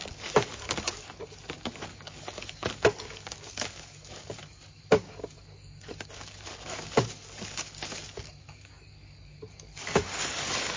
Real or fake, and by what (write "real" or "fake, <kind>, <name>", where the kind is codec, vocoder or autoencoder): fake, codec, DAC